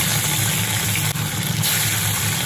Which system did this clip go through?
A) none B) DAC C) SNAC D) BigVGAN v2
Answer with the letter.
A